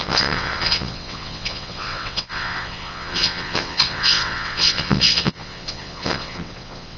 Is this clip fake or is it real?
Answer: fake